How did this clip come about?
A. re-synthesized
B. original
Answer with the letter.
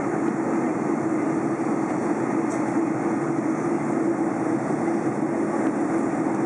B